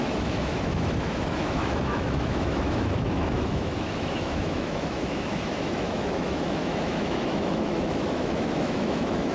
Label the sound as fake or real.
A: fake